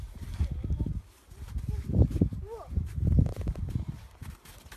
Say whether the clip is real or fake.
real